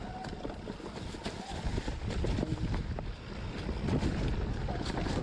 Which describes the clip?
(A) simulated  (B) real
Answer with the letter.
B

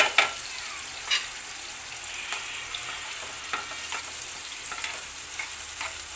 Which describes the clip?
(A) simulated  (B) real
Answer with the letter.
B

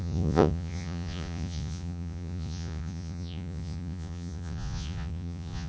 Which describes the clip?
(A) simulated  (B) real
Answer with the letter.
A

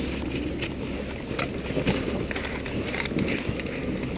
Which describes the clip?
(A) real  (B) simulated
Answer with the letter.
A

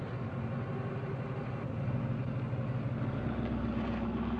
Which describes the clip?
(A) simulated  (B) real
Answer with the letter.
B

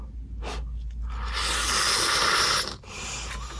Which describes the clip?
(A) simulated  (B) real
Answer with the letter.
B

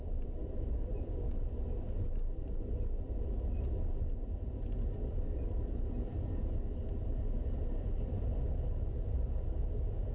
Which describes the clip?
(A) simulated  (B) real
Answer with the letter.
B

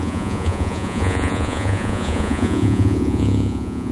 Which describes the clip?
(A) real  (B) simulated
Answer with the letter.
B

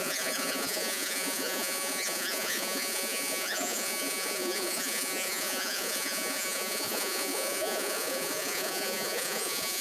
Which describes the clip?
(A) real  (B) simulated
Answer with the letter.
B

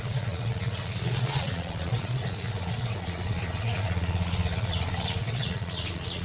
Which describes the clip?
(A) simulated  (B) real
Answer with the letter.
A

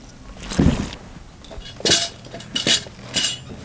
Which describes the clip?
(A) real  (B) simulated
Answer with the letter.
A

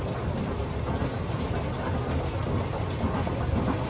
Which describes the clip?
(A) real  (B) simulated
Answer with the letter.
A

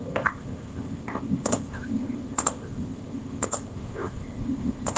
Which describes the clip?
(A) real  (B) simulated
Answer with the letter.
B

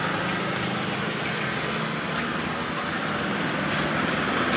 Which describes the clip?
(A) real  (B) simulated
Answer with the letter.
A